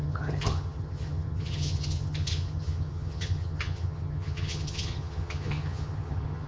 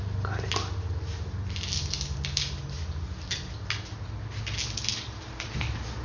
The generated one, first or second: first